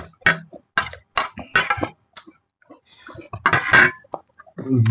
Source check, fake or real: real